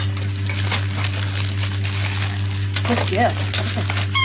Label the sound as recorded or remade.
recorded